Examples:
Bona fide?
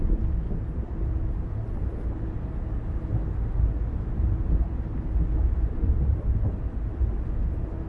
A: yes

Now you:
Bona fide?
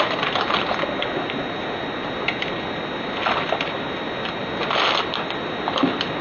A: yes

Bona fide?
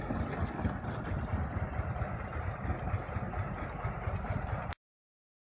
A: yes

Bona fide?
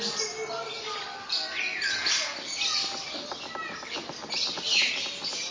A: yes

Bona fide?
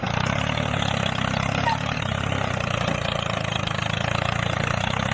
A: no